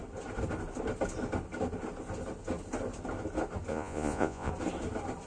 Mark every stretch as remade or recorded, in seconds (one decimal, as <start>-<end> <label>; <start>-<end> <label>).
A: 0.0-3.7 recorded; 3.7-4.5 remade; 4.5-5.3 recorded